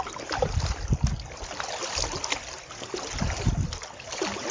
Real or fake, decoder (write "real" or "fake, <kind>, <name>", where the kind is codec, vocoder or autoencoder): real